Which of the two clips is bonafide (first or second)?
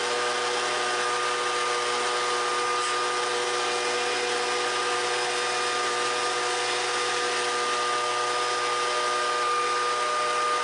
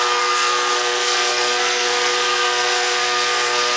first